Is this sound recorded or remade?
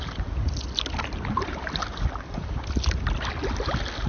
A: recorded